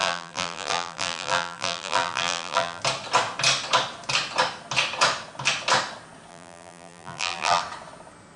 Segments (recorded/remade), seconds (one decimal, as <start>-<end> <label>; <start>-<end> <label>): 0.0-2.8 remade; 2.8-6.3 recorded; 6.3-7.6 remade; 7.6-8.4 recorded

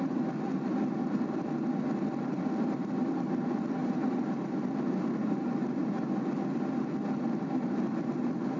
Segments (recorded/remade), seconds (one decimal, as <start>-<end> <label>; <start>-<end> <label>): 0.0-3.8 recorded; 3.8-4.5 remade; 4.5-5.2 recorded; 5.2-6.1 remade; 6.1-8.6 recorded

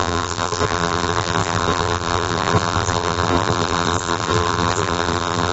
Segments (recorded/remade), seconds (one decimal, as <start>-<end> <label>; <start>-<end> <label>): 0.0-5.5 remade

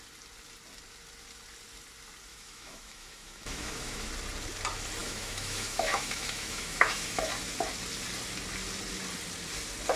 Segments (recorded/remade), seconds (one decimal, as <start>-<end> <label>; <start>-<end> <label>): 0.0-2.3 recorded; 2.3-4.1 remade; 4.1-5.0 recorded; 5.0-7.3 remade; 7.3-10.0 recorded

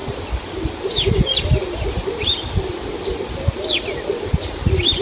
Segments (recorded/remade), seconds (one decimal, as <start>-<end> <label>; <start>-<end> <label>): 0.0-5.0 recorded

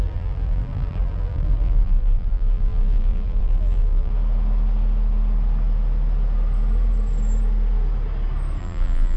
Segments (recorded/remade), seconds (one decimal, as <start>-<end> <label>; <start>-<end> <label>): 0.0-4.1 remade; 4.1-8.6 recorded; 8.6-9.2 remade

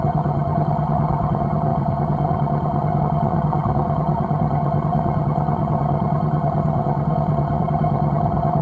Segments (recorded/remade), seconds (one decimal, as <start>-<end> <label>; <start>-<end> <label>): 0.0-8.6 remade